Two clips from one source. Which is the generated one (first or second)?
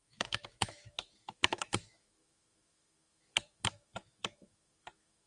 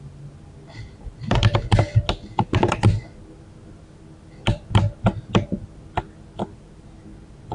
first